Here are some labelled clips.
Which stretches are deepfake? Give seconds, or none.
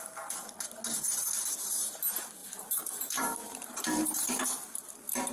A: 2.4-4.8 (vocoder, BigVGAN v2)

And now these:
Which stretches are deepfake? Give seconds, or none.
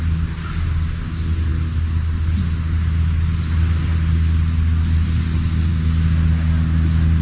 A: none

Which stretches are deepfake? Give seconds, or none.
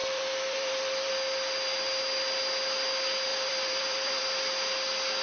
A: 0.0-1.1 (vocoder, BigVGAN v2); 3.3-4.2